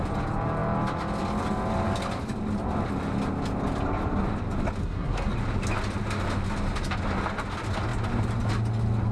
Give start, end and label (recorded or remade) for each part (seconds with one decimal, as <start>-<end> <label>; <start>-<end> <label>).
0.0-4.8 recorded; 4.8-5.3 remade; 5.3-9.1 recorded